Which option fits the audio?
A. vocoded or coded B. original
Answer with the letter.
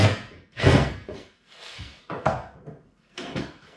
A